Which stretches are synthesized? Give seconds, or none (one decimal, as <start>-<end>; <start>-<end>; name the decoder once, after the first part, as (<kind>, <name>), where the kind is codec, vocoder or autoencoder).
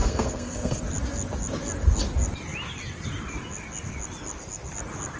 0.0-0.8 (codec, SNAC)